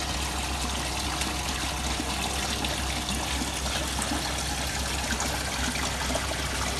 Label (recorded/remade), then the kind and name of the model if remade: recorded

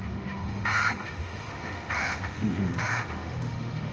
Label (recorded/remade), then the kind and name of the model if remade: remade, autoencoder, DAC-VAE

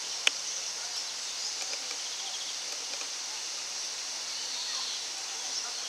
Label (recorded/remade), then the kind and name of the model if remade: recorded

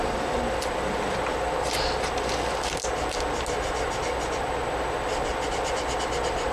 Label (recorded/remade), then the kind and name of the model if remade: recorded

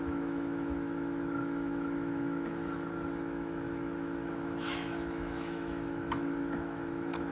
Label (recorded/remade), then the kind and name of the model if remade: remade, autoencoder, DAC-VAE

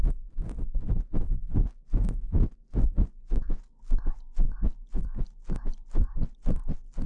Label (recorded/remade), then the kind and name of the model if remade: recorded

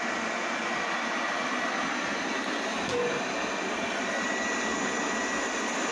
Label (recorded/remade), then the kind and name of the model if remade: recorded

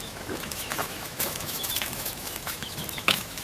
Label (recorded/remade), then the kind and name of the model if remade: remade, autoencoder, DAC-VAE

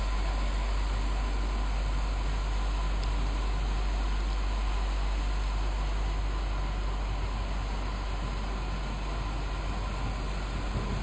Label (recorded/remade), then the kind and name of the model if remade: recorded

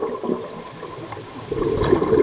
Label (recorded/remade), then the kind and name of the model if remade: recorded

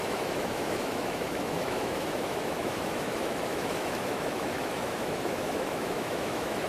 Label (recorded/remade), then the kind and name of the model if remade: remade, autoencoder, DAC-VAE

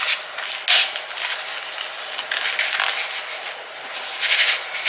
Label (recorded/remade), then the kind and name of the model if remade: recorded